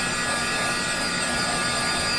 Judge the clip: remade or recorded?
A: recorded